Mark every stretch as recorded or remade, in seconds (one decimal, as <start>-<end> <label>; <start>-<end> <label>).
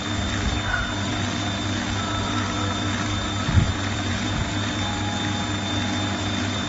0.0-3.7 recorded; 3.7-4.7 remade; 4.7-6.7 recorded